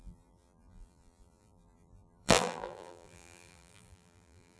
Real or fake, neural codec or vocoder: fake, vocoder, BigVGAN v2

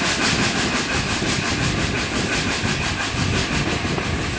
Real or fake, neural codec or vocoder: real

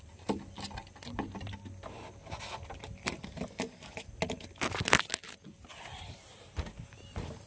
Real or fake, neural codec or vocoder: real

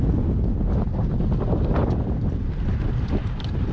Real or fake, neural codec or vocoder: real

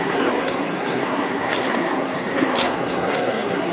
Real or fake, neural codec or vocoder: fake, codec, SNAC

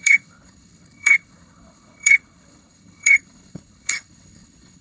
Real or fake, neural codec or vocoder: fake, codec, HILCodec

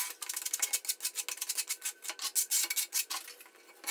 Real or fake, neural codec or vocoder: real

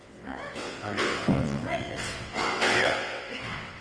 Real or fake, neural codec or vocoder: fake, vocoder, WaveNeXt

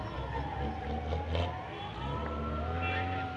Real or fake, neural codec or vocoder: real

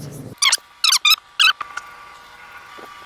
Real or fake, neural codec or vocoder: real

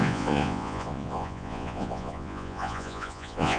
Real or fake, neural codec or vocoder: fake, vocoder, Vocos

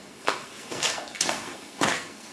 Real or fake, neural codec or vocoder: fake, codec, SNAC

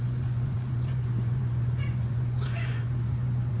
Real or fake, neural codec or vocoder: fake, vocoder, Vocos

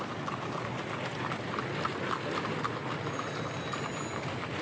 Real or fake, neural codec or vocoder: real